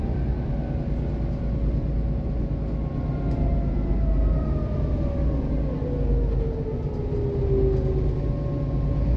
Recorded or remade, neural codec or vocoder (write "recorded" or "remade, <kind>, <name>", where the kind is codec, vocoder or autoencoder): recorded